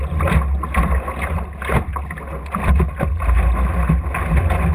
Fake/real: real